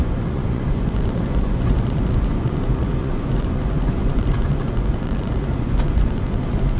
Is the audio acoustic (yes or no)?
no